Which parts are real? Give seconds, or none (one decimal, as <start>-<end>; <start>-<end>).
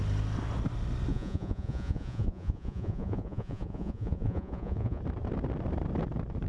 0.0-1.1; 5.0-6.5